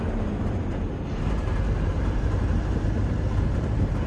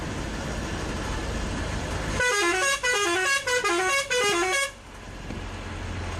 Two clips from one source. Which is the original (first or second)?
second